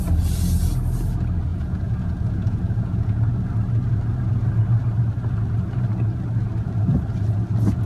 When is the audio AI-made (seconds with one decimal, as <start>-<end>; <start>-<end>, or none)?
1.5-3.2